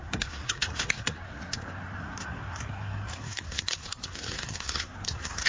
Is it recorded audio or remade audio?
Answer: remade